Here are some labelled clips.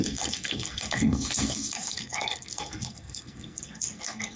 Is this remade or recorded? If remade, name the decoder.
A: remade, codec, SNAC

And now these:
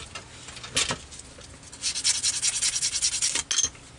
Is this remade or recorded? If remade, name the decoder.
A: recorded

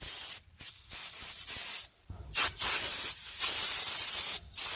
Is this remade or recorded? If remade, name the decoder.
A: recorded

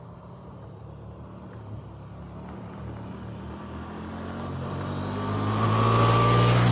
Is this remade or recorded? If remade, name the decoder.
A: recorded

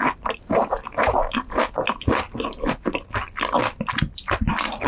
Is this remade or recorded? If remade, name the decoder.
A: recorded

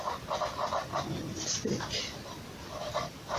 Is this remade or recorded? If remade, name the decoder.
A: recorded